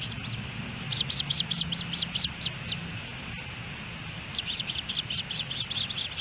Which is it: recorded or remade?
recorded